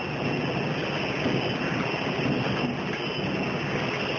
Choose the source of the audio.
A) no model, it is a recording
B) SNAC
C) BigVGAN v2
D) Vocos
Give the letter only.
A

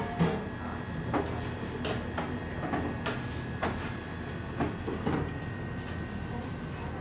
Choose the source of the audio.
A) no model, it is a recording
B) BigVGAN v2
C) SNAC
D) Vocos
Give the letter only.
A